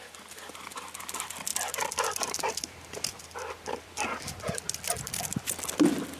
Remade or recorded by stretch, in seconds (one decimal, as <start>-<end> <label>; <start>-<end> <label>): 0.0-6.2 remade